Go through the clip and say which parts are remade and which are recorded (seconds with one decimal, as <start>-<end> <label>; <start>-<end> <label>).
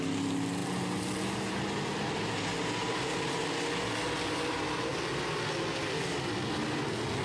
0.0-7.2 recorded